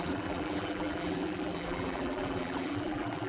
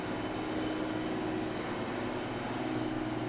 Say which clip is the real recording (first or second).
second